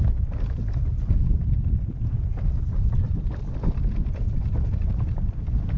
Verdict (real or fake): fake